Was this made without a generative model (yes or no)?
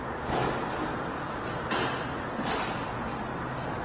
yes